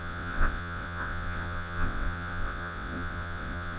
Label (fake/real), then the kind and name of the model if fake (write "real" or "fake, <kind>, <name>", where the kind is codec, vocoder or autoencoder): fake, vocoder, WaveNeXt